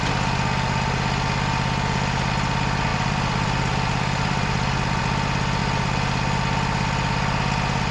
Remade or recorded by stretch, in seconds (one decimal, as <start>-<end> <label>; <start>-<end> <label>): 0.0-2.9 recorded; 2.9-5.0 remade; 5.0-7.9 recorded